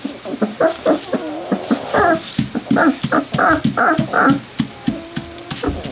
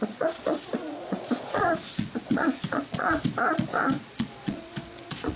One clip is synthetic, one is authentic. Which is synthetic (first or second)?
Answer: second